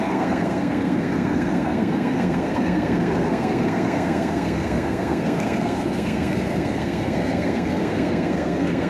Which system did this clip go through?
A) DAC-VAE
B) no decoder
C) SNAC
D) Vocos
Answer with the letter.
C